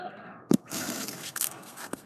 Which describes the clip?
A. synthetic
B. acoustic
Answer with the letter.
A